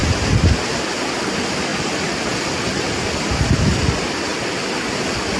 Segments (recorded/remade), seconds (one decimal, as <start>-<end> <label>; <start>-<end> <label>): 0.0-0.7 recorded; 0.7-4.3 remade; 4.3-5.4 recorded